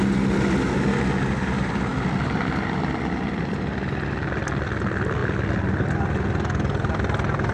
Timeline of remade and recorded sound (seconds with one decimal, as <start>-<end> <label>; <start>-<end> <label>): 0.0-7.5 recorded